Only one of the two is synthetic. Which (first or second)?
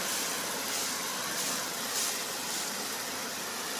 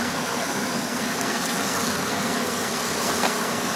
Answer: second